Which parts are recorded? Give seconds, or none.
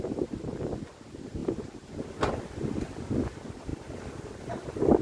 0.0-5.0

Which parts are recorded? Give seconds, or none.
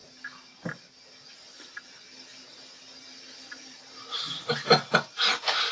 0.0-5.7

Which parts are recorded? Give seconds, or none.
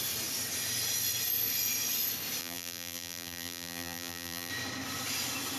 0.0-2.4; 4.5-5.6